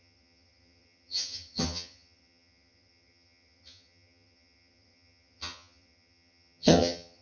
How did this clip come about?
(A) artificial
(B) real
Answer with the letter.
A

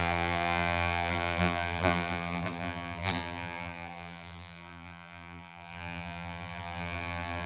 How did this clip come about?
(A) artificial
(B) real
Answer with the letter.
A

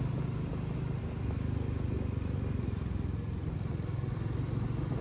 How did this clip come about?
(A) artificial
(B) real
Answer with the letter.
B